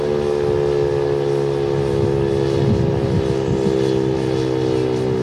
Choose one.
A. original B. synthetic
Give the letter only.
A